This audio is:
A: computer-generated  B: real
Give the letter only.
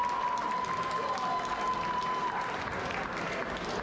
B